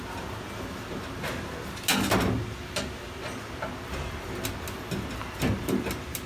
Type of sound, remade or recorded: recorded